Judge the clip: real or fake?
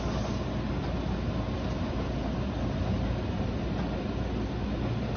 real